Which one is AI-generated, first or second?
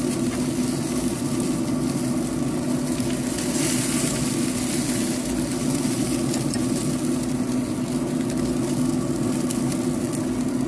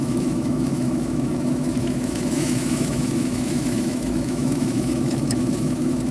second